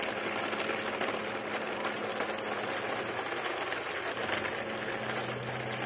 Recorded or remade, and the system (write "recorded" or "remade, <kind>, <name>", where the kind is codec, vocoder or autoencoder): recorded